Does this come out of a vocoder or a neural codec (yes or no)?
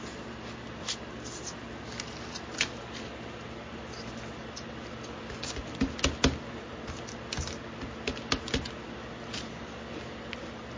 no